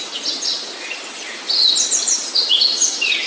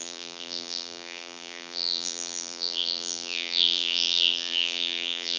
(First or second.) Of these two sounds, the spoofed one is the second